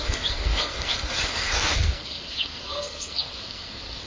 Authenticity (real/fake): fake